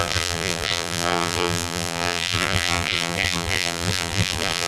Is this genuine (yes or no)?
no